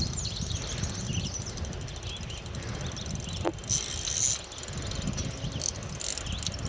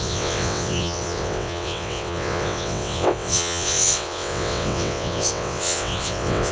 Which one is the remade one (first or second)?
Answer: second